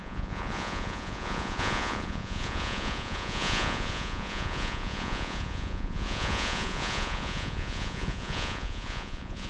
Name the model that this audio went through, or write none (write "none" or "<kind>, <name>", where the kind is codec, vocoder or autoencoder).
vocoder, Vocos